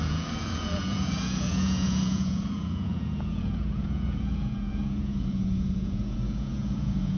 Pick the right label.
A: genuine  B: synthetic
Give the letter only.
B